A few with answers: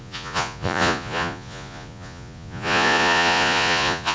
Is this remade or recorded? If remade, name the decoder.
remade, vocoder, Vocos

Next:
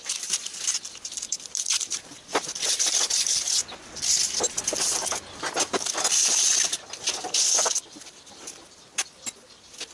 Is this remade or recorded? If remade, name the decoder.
recorded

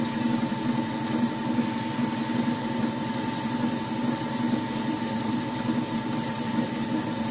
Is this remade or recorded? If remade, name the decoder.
recorded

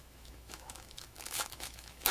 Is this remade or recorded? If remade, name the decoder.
remade, autoencoder, DAC-VAE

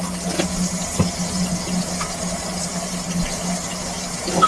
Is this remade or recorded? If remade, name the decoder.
recorded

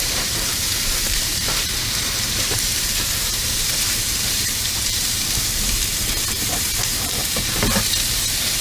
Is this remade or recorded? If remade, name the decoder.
remade, vocoder, BigVGAN v2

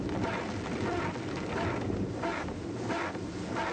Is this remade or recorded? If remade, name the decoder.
recorded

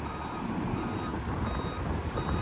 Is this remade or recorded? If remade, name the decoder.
recorded